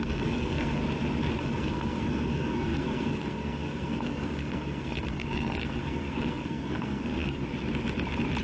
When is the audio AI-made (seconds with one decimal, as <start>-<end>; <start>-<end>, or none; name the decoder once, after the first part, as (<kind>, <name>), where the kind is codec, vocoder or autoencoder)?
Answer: 0.0-0.8 (codec, SNAC); 1.4-7.4